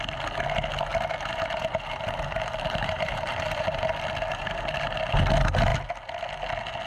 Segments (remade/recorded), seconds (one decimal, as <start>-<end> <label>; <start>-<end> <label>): 0.0-0.9 recorded; 0.9-3.9 remade; 3.9-4.3 recorded; 4.3-5.0 remade; 5.0-6.9 recorded